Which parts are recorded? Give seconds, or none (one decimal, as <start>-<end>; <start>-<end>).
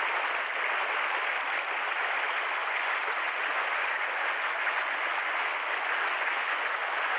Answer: 0.0-2.6